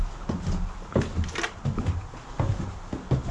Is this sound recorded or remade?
recorded